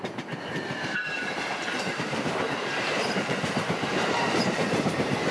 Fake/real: fake